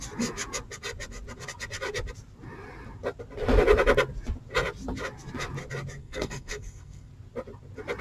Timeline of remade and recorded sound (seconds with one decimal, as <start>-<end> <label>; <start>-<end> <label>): 0.0-6.0 recorded; 6.0-7.1 remade; 7.1-8.0 recorded